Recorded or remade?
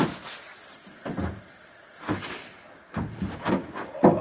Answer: recorded